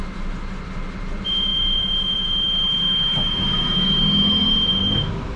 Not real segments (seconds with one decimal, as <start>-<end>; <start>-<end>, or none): none